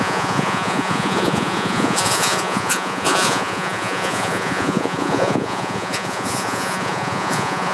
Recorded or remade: remade